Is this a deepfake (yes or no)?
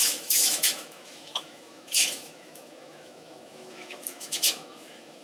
yes